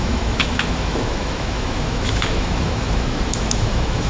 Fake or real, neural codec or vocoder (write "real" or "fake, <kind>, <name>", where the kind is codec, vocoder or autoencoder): fake, autoencoder, DAC-VAE